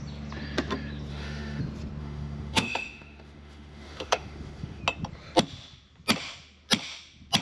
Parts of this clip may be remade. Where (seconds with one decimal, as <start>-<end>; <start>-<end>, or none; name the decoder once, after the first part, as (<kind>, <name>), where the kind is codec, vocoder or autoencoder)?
1.1-1.6 (autoencoder, DAC-VAE); 2.0-4.8